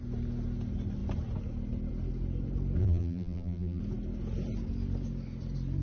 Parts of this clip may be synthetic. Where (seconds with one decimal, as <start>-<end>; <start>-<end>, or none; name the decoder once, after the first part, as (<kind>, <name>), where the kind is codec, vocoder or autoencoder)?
2.8-3.8 (vocoder, BigVGAN v2)

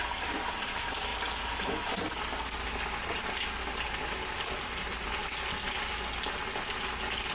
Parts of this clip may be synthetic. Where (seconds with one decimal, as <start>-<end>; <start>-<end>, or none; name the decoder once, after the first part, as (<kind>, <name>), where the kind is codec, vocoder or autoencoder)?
none

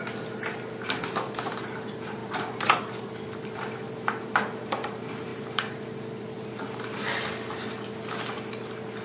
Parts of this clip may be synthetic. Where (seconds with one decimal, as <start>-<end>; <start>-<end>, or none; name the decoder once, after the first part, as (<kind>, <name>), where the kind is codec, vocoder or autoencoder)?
2.2-3.6 (vocoder, BigVGAN v2)

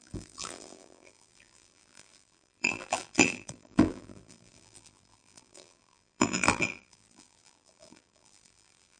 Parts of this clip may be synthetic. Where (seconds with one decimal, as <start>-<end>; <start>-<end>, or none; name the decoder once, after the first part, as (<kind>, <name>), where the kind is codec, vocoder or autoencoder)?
0.0-9.0 (vocoder, BigVGAN v2)

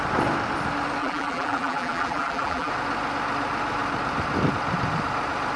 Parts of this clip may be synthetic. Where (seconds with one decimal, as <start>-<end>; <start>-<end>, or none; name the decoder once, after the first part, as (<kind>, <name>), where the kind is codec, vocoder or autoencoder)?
1.0-2.7 (vocoder, BigVGAN v2)

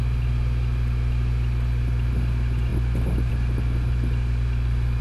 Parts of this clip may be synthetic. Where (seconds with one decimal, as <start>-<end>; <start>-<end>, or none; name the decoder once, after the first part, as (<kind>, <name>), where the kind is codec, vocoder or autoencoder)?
none

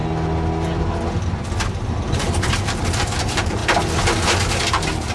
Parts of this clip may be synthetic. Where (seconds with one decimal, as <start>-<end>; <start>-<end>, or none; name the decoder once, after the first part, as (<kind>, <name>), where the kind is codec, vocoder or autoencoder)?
1.7-3.6 (vocoder, BigVGAN v2); 4.6-5.1